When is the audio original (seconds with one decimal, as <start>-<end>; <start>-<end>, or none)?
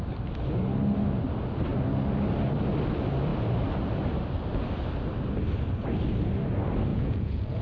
0.0-6.9